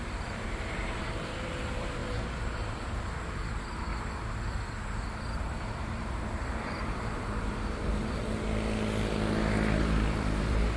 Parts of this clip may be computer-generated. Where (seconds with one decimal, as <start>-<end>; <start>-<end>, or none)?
0.0-3.9; 5.4-8.2; 9.8-10.8